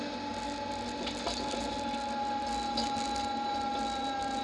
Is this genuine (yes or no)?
yes